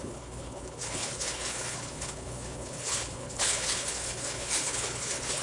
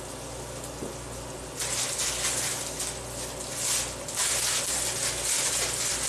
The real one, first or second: second